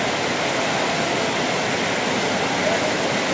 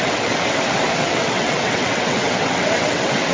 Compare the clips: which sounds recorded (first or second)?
first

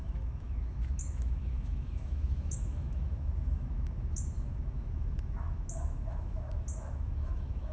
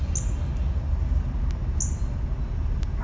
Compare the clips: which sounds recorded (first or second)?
second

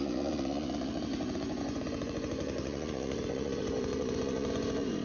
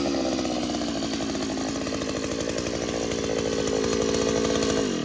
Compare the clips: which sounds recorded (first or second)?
second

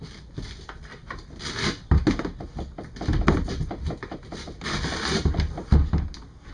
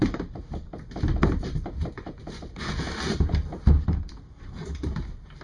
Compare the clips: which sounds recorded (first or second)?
first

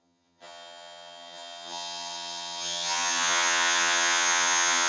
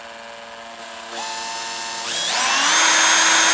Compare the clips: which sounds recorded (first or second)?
second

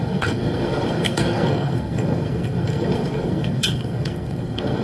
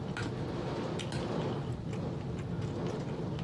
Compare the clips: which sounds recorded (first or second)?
second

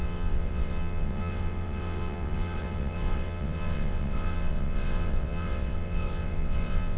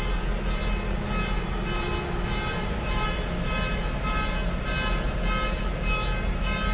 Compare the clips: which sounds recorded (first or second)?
second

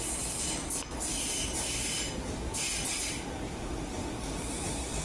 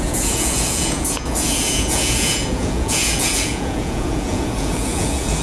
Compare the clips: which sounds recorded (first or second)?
first